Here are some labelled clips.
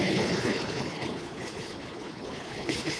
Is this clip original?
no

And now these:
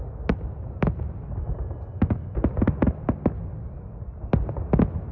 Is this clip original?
yes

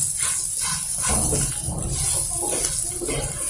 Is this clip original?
yes